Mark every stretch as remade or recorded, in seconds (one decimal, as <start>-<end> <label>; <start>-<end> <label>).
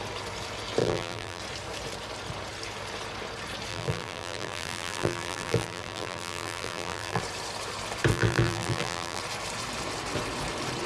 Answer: 0.0-0.8 recorded; 0.8-1.4 remade; 1.4-3.7 recorded; 3.7-7.2 remade; 7.2-8.1 recorded; 8.1-9.2 remade; 9.2-10.9 recorded